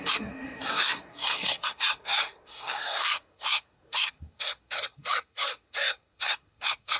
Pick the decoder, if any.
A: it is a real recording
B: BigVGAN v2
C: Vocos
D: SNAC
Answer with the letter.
D